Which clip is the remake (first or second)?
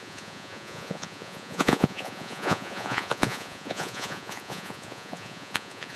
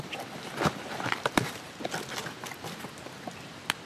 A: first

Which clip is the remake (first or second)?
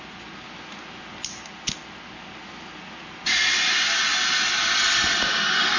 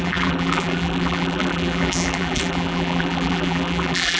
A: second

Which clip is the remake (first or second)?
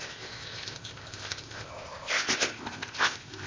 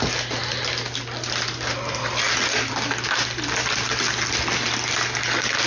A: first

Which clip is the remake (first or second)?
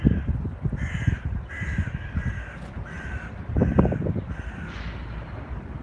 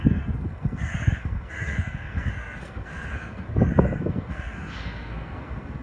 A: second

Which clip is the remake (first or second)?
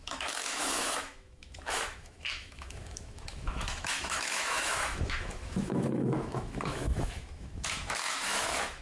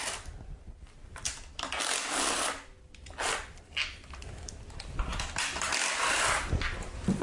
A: first